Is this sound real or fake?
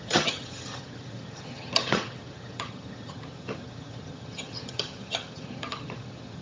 fake